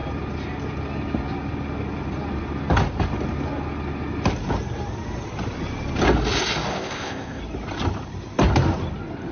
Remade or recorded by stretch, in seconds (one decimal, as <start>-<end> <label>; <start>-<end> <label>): 0.0-6.7 recorded; 6.7-7.4 remade; 7.4-9.3 recorded